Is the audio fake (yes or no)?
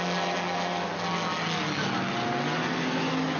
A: no